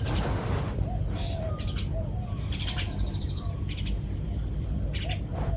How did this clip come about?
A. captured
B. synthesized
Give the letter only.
B